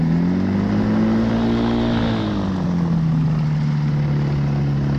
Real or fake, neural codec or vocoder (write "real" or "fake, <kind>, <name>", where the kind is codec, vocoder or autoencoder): real